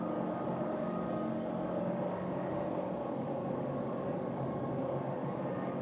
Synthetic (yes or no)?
yes